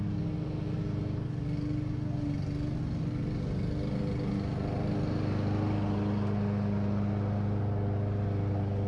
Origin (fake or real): real